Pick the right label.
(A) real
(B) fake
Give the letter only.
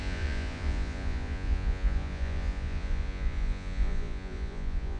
B